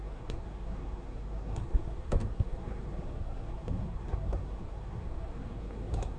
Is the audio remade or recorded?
remade